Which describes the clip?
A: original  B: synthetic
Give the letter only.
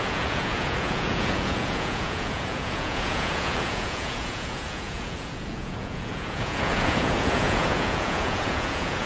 B